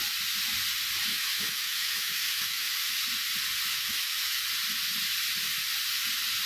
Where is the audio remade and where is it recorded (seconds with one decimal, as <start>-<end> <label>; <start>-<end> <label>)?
0.0-1.1 recorded; 1.1-2.9 remade; 2.9-3.7 recorded; 3.7-4.4 remade; 4.4-6.5 recorded